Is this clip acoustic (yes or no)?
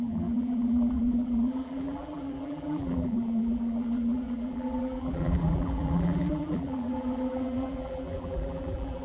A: no